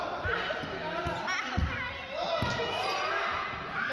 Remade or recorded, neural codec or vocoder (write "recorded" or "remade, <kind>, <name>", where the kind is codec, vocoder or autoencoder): recorded